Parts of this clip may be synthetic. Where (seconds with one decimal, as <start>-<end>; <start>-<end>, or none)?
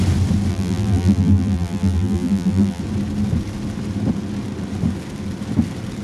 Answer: 0.5-2.8